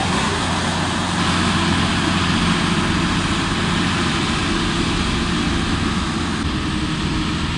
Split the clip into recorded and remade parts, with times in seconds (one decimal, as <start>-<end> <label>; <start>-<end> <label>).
0.0-0.5 remade; 0.5-7.6 recorded